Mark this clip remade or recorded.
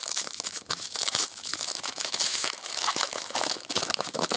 remade